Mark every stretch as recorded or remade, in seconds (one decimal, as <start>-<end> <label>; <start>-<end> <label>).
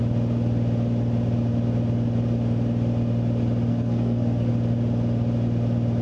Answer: 0.0-3.7 recorded; 3.7-4.5 remade; 4.5-6.0 recorded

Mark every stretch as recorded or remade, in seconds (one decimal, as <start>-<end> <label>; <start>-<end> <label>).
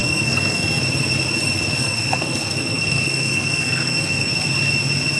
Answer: 0.0-0.8 remade; 0.8-1.8 recorded; 1.8-4.3 remade; 4.3-5.2 recorded